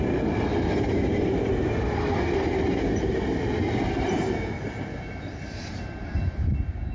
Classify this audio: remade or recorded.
recorded